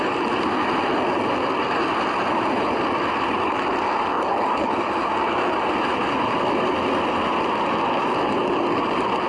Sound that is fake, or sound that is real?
real